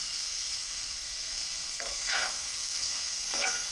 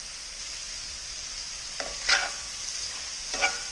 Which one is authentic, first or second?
second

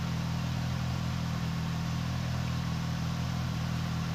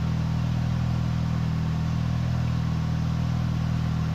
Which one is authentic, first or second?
second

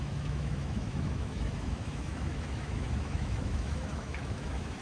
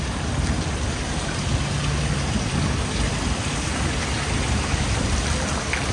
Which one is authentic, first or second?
second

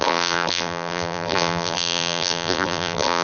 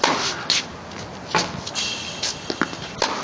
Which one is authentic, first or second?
second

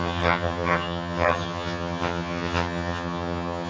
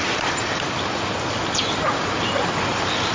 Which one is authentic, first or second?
second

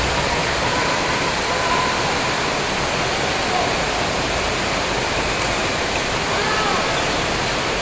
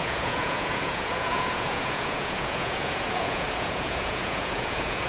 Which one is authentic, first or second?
first